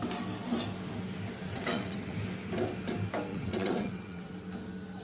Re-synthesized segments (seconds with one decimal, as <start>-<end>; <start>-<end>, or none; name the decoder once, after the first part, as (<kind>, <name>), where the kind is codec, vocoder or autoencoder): 1.5-2.1 (vocoder, WaveNeXt); 3.3-4.3